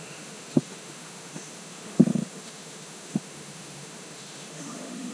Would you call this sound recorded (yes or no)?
no